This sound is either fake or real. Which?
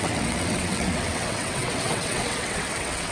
fake